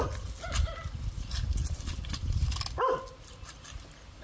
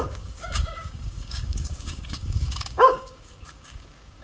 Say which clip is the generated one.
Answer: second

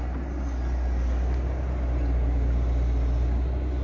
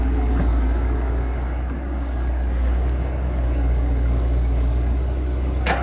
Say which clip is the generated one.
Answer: second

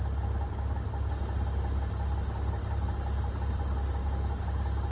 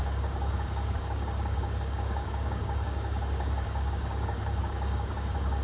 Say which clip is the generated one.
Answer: second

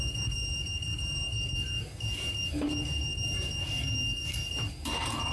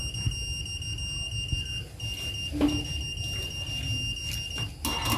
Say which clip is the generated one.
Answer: first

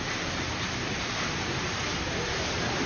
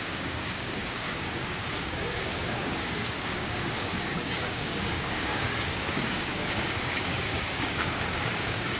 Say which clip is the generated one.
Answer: second